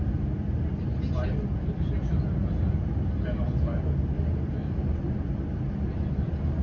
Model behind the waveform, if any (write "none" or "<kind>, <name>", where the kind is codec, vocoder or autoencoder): none